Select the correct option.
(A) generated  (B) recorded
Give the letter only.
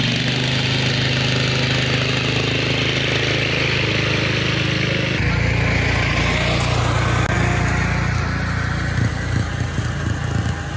B